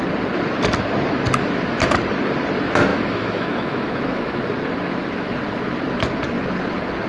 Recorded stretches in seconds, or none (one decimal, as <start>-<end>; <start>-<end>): 0.0-2.9; 4.4-7.1